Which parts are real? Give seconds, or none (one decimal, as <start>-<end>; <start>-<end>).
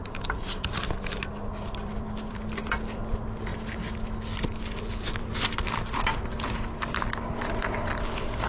3.5-4.8